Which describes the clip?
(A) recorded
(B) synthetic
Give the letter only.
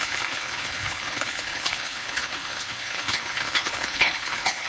B